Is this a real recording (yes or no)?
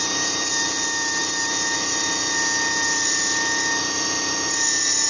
yes